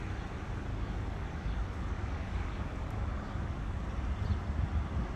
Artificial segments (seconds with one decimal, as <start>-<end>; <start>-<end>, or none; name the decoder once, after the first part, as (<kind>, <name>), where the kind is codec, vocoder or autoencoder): 0.7-3.8 (codec, DAC)